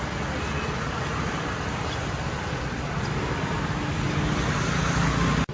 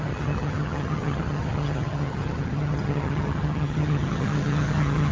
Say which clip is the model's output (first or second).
second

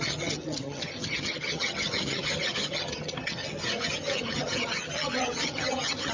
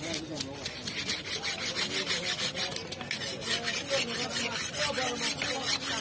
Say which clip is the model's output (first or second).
first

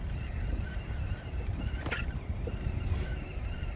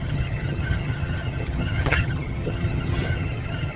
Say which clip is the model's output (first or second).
second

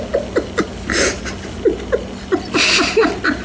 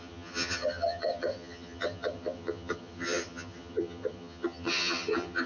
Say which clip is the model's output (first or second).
second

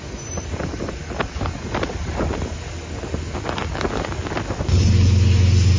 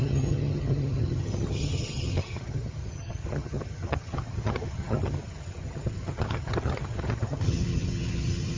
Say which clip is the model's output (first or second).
second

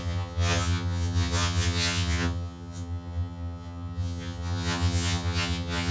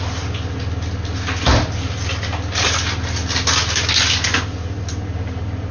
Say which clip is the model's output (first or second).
first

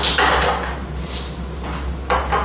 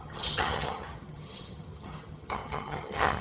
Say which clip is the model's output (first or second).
second